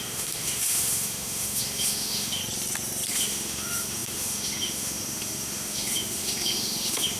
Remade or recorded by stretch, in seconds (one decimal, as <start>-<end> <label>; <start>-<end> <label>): 0.0-2.4 remade; 2.4-3.1 recorded; 3.1-7.2 remade